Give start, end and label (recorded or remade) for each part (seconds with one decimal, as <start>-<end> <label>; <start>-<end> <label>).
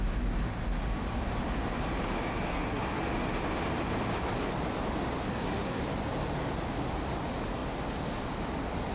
0.0-2.5 recorded; 2.5-3.0 remade; 3.0-5.3 recorded; 5.3-5.8 remade; 5.8-8.9 recorded